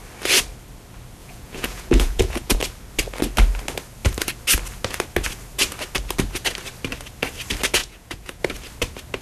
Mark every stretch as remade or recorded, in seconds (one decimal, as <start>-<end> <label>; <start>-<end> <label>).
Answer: 0.0-1.2 recorded; 1.2-2.6 remade; 2.6-7.8 recorded; 7.8-8.4 remade; 8.4-9.2 recorded